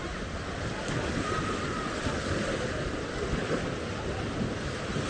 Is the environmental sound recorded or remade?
recorded